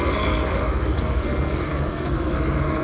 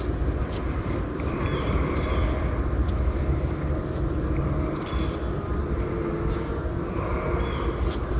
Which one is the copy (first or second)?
first